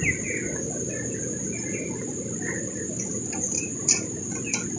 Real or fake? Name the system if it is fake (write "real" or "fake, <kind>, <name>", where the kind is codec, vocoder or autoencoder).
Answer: real